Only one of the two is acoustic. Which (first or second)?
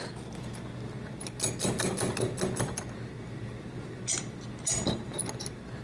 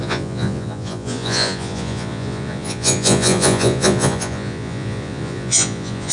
first